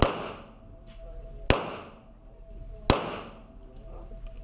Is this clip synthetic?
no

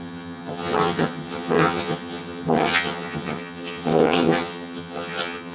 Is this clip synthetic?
yes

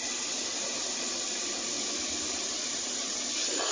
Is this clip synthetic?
no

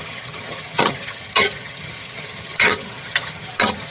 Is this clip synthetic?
yes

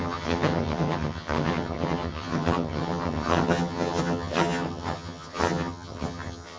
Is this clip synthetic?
yes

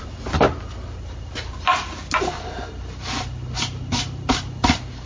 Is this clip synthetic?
no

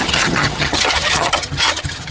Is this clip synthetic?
yes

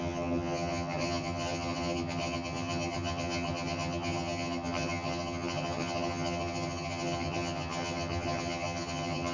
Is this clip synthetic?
yes